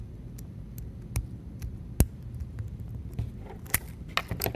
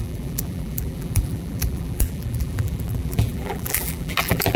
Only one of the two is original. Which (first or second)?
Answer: first